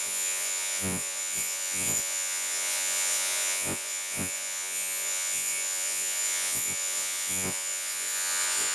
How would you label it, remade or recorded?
remade